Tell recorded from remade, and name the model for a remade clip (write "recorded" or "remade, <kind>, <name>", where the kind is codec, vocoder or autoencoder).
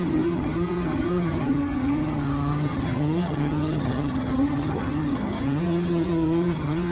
remade, vocoder, HiFi-GAN